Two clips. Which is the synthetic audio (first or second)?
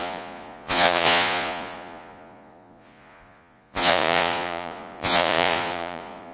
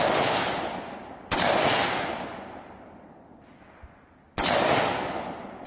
first